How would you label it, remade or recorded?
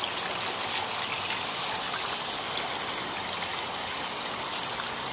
recorded